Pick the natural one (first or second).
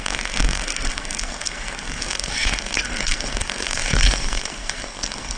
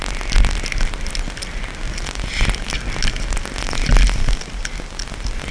second